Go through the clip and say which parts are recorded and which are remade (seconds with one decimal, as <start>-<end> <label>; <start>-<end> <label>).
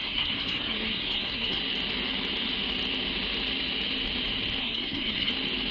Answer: 0.0-1.6 remade; 1.6-4.6 recorded; 4.6-5.3 remade; 5.3-5.7 recorded